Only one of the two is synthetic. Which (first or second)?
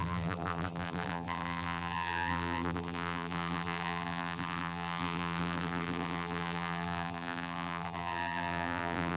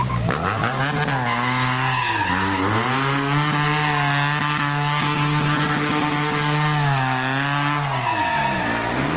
first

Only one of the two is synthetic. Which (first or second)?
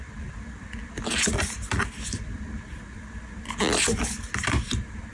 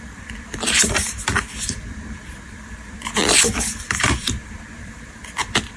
second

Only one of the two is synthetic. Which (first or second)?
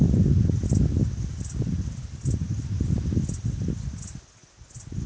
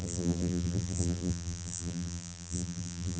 second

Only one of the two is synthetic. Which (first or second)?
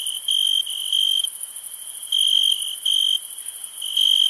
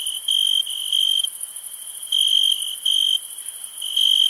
second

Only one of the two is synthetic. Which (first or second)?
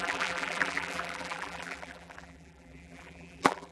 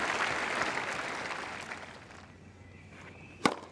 first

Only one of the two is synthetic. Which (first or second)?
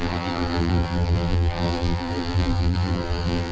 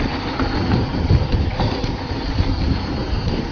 first